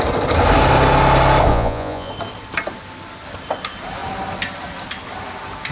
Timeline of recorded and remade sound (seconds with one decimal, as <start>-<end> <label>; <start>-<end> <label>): 0.0-1.5 recorded; 1.5-2.1 remade; 2.1-5.7 recorded